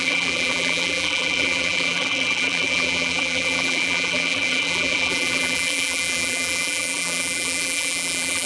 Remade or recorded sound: remade